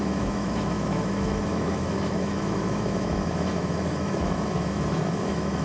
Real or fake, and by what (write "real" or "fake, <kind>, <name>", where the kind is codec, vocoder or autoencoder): fake, autoencoder, DAC-VAE